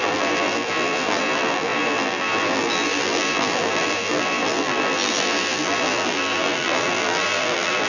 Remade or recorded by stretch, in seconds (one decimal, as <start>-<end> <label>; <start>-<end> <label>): 0.0-7.9 remade